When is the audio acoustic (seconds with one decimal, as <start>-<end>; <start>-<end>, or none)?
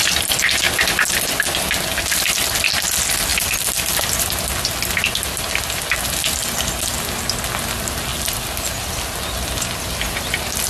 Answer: 0.0-10.7